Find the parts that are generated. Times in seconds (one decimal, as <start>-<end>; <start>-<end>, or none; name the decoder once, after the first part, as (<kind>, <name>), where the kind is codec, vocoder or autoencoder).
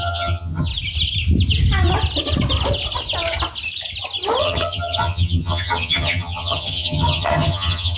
0.0-0.7 (vocoder, HiFi-GAN); 4.4-8.0